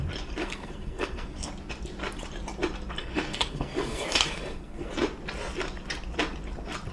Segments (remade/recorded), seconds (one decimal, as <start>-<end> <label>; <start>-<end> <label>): 0.0-0.4 recorded; 0.4-1.5 remade; 1.5-3.0 recorded; 3.0-4.9 remade; 4.9-6.9 recorded